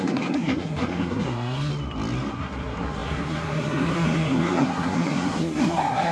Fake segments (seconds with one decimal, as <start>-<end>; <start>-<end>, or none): 0.0-1.7; 2.3-6.1